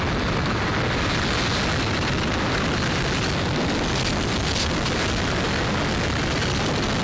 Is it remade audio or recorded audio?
recorded